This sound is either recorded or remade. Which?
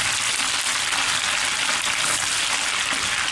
recorded